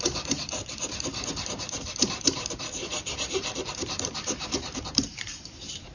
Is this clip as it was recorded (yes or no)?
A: no